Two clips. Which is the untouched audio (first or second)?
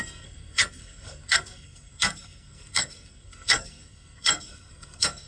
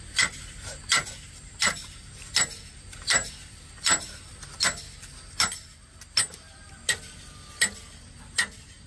second